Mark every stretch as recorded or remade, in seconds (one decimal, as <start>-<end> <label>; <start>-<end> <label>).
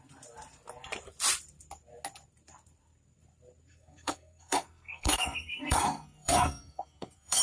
0.0-3.7 recorded; 3.7-7.4 remade